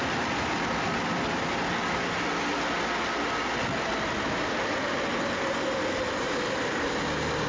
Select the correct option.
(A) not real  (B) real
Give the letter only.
B